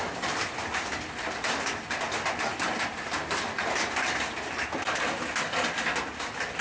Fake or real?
real